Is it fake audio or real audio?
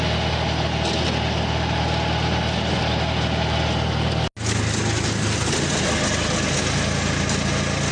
real